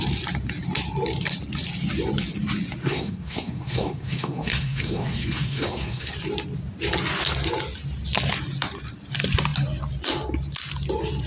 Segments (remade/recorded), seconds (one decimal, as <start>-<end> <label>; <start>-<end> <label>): 0.0-2.8 recorded; 2.8-6.1 remade; 6.1-11.3 recorded